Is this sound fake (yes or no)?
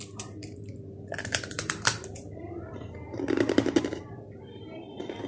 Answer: yes